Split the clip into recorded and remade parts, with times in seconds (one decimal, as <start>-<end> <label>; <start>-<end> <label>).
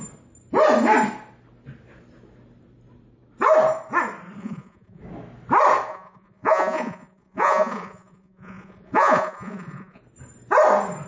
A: 0.0-4.4 recorded; 4.4-5.0 remade; 5.0-5.9 recorded; 5.9-10.0 remade; 10.0-11.1 recorded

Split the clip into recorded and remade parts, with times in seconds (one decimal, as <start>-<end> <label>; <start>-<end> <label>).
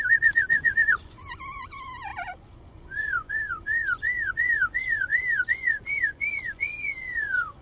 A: 0.0-7.6 remade